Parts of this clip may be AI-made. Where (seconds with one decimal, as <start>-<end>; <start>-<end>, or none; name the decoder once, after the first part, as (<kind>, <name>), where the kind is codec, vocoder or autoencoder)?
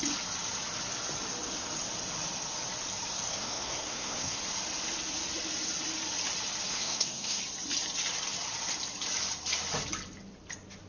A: 3.3-4.4 (codec, SNAC); 6.7-7.4